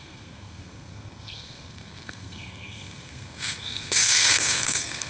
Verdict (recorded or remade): remade